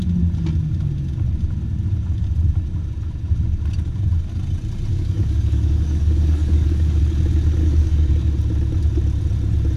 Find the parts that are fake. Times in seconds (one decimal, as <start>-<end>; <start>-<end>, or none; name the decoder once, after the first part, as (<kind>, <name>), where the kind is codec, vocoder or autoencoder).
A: 4.9-7.0 (codec, DAC); 7.6-8.1